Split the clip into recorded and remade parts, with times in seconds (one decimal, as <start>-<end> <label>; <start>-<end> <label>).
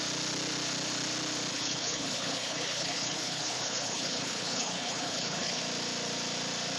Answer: 0.0-1.5 recorded; 1.5-5.6 remade; 5.6-6.8 recorded